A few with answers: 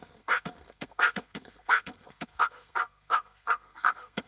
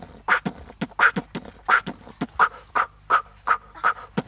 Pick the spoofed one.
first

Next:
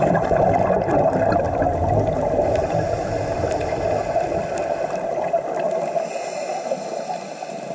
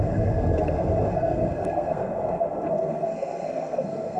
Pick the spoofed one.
second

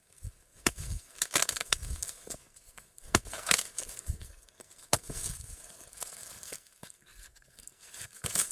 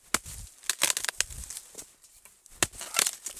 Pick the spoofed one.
first